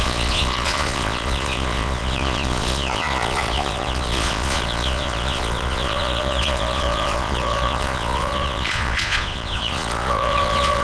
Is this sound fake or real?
fake